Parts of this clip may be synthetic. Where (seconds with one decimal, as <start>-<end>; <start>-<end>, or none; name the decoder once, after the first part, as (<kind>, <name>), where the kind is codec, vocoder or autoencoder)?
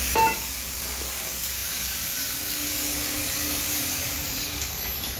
0.0-5.2 (codec, DAC)